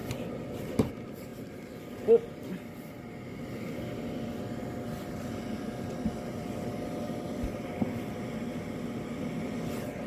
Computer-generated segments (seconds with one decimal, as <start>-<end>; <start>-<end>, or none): none